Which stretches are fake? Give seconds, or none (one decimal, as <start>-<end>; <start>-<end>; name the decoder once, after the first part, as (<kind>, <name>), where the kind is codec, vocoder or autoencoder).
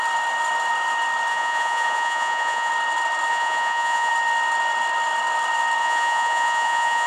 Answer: 1.3-2.7 (vocoder, Vocos); 3.3-4.1; 5.8-7.1